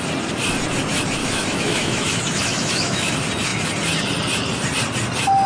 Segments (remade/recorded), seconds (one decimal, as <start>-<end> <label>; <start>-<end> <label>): 0.0-1.2 recorded; 1.2-3.1 remade; 3.1-5.5 recorded